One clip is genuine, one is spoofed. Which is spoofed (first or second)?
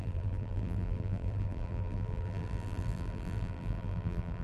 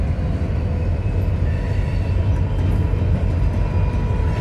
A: first